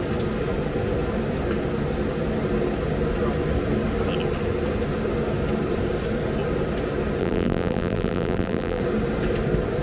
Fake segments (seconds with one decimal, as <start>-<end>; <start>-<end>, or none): 7.2-8.8